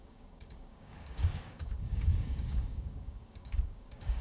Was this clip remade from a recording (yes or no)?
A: yes